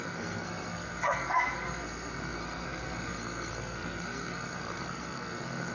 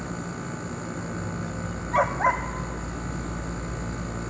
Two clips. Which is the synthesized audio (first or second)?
first